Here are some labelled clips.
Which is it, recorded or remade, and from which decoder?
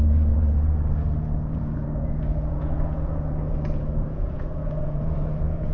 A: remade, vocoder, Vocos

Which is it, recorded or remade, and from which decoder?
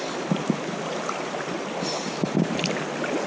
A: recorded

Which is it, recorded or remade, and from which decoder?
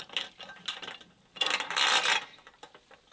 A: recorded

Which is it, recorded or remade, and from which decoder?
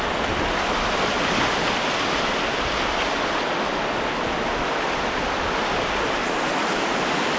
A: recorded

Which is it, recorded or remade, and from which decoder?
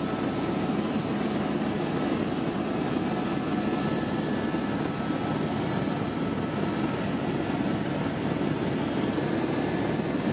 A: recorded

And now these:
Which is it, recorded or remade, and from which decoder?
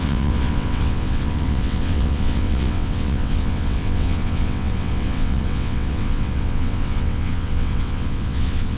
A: remade, vocoder, WaveNeXt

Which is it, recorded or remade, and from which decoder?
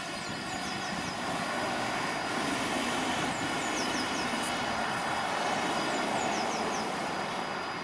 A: recorded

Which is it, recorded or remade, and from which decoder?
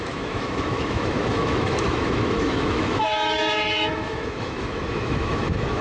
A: remade, autoencoder, DAC-VAE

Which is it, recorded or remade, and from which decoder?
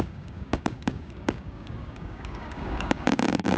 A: remade, codec, DAC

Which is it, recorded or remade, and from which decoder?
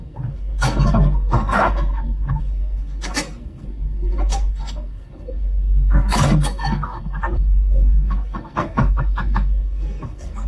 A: remade, codec, SNAC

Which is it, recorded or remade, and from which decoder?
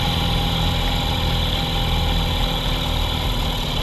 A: recorded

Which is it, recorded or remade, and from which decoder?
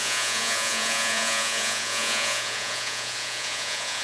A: remade, vocoder, Vocos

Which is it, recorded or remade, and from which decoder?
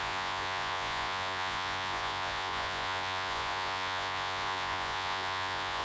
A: remade, vocoder, Vocos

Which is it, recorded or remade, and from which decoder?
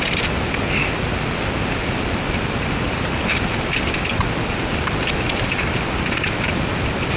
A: recorded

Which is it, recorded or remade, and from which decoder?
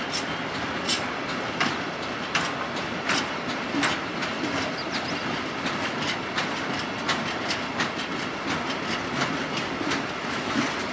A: recorded